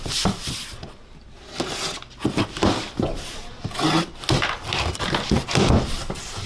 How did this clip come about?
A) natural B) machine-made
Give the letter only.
A